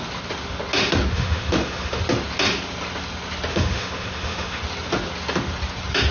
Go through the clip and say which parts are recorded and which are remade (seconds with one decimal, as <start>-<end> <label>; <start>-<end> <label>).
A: 0.0-1.1 recorded; 1.1-2.0 remade; 2.0-3.5 recorded; 3.5-4.6 remade; 4.6-6.1 recorded